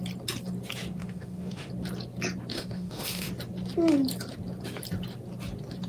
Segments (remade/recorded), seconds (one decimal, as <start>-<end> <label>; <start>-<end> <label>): 0.0-1.0 recorded; 1.0-1.7 remade; 1.7-2.5 recorded; 2.5-3.3 remade; 3.3-5.9 recorded